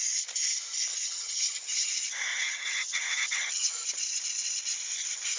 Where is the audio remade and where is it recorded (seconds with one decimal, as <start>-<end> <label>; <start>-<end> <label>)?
0.0-0.9 recorded; 0.9-1.9 remade; 1.9-2.3 recorded; 2.3-3.7 remade; 3.7-5.4 recorded